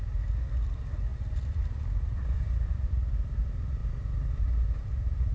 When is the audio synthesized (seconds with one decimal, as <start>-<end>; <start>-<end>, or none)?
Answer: 1.1-2.7